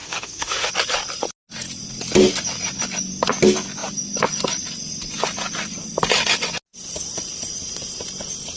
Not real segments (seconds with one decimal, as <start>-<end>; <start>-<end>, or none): 0.0-0.7